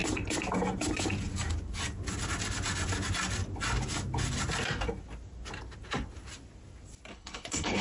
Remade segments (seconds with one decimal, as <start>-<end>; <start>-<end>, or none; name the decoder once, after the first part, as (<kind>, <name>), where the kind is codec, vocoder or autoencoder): 7.1-7.8 (codec, HILCodec)

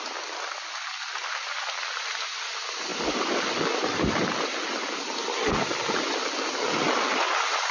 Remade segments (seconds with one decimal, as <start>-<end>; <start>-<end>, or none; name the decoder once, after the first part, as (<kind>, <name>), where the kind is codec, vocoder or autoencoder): none

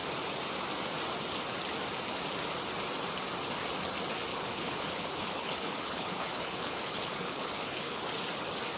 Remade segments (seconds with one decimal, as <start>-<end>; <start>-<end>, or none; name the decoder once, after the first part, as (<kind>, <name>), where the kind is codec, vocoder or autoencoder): 4.3-8.0 (codec, HILCodec)

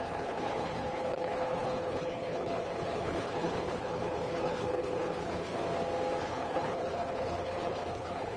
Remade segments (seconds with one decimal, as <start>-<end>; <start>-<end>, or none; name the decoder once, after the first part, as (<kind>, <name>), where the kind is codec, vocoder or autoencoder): 0.0-5.6 (codec, HILCodec); 6.2-8.4

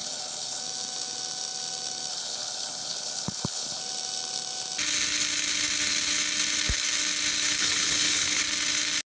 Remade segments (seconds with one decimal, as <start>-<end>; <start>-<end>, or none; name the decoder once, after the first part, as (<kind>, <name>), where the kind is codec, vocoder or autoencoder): 0.0-0.6 (codec, HILCodec); 2.1-3.8; 7.6-8.4

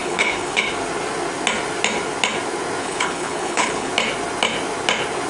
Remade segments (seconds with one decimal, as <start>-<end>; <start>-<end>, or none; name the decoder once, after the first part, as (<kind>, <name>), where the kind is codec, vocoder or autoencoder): 0.0-0.6 (codec, HILCodec); 2.8-3.9

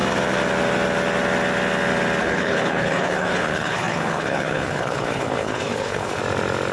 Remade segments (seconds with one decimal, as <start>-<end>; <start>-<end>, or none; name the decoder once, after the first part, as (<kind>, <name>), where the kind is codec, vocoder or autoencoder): 2.2-6.2 (codec, HILCodec)